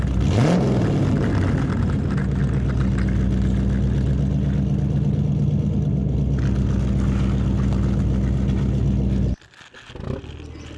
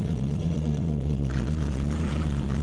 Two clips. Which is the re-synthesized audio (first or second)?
second